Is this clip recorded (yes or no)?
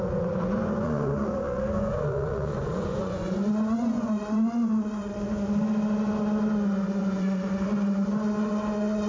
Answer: no